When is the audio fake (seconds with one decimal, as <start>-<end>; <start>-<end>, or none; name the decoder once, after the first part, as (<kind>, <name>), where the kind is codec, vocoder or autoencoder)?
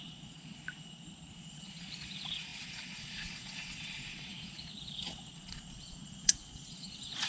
0.0-0.6 (vocoder, Vocos); 1.5-7.3